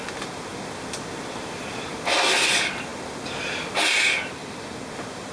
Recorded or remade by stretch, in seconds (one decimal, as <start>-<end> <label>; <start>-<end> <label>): 0.0-5.3 recorded

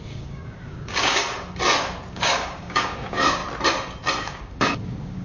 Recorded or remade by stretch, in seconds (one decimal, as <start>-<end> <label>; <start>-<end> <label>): 0.0-1.2 remade; 1.2-2.1 recorded; 2.1-3.4 remade; 3.4-4.2 recorded; 4.2-5.2 remade

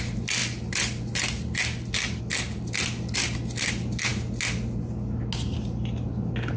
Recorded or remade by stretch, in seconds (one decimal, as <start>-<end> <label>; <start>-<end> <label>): 0.0-6.6 recorded